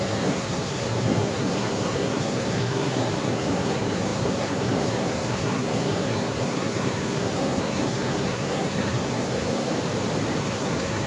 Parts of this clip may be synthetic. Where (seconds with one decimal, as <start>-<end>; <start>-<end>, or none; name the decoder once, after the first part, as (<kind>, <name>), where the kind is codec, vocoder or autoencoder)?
0.0-9.7 (codec, SNAC); 10.4-11.1